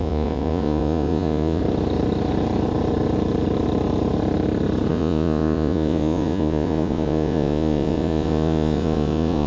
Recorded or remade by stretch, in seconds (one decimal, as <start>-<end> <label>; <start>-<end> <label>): 0.0-1.6 remade; 1.6-4.9 recorded; 4.9-9.5 remade